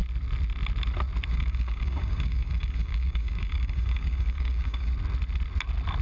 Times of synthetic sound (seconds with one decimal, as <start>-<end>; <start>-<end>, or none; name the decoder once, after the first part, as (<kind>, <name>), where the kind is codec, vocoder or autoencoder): 1.3-4.9 (codec, DAC)